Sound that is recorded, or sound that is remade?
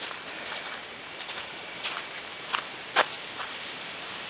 recorded